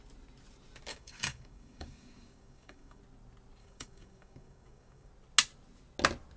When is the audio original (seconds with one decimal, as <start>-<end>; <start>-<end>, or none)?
0.0-0.9; 3.0-3.6; 5.1-6.4